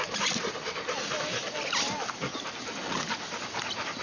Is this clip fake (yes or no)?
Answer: no